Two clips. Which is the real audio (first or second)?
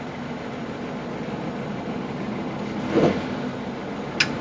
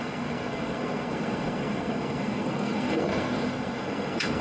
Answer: first